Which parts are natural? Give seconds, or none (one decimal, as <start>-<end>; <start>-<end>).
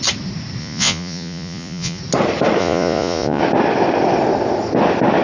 0.0-0.6; 2.0-2.6; 3.4-5.2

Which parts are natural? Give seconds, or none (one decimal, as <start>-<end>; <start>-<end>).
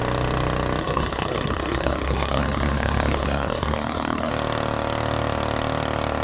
0.0-0.8; 4.3-6.2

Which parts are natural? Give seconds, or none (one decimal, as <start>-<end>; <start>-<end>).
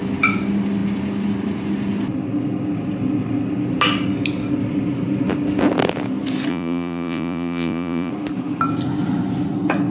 0.0-6.5; 8.1-9.9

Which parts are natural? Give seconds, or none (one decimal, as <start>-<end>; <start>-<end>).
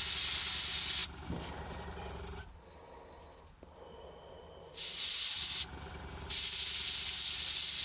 0.0-7.8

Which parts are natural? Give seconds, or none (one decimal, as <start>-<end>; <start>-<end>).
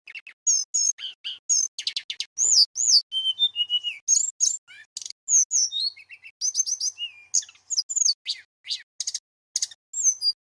0.0-10.5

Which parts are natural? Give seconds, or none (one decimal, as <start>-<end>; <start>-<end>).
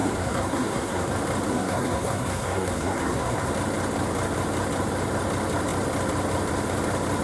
1.1-1.5; 3.5-7.2